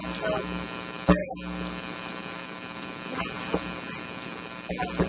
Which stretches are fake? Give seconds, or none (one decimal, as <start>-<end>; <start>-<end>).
none